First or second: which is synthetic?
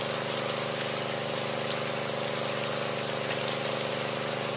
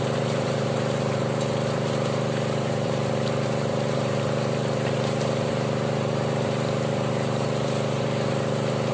second